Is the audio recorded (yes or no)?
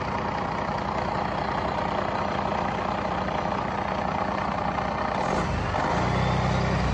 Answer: yes